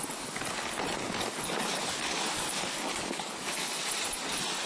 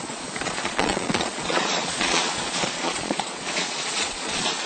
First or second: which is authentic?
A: first